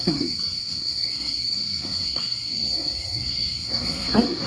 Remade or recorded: remade